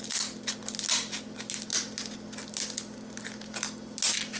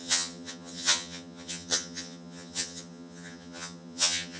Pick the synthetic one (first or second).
second